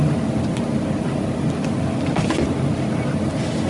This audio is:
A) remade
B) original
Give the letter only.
B